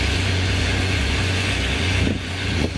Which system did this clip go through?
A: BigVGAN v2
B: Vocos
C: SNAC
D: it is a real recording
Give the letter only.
B